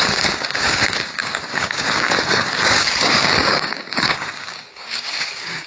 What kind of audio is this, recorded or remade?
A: remade